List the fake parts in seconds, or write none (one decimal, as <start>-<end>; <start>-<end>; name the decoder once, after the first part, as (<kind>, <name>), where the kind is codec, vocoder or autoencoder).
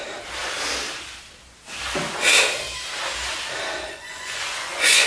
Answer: 3.9-5.1 (vocoder, Vocos)